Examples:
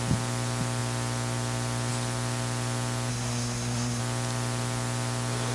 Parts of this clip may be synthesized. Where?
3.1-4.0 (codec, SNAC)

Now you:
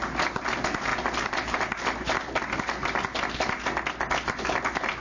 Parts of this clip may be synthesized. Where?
none

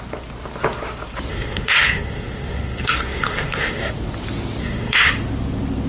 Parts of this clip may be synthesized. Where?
1.3-3.9 (codec, SNAC); 4.6-5.1

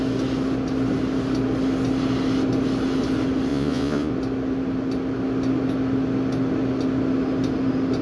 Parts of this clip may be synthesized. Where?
3.5-4.1 (vocoder, Vocos)

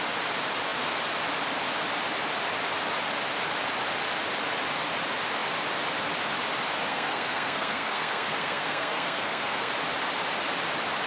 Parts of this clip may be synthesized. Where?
6.9-9.7 (codec, SNAC)

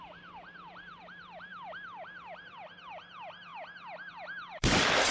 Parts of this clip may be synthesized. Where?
0.0-3.5 (vocoder, BigVGAN v2); 4.1-5.1

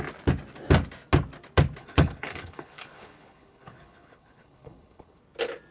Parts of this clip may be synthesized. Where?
1.8-5.2 (codec, HILCodec)

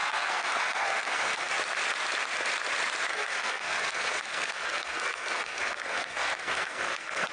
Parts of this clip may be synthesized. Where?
0.0-1.5 (codec, SNAC); 3.1-7.3